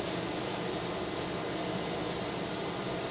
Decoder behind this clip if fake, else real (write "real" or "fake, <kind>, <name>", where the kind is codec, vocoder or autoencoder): real